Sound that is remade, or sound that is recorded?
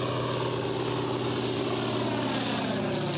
recorded